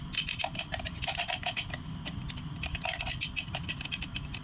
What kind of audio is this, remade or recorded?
recorded